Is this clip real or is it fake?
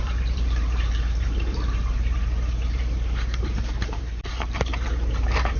fake